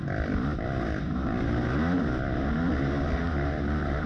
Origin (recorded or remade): recorded